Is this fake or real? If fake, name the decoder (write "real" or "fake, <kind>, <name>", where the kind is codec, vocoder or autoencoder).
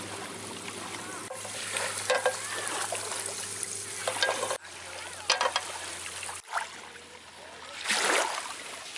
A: real